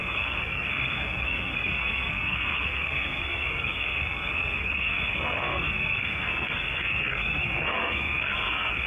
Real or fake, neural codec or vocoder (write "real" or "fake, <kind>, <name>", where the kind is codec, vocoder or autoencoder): fake, codec, SNAC